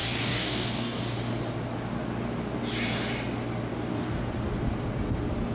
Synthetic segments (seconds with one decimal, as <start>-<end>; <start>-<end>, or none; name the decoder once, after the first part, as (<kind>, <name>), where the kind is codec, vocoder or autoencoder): 0.0-1.0 (codec, DAC); 3.7-4.2

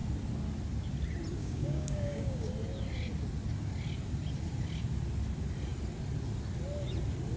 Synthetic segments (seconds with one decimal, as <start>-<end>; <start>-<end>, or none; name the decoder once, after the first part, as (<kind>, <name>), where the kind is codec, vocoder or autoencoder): 1.4-2.5 (codec, DAC)